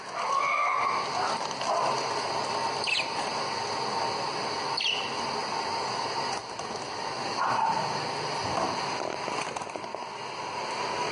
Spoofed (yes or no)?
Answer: no